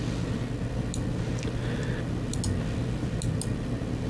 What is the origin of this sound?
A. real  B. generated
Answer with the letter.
A